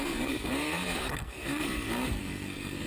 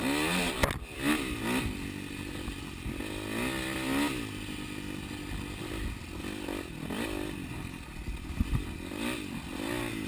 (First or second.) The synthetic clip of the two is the first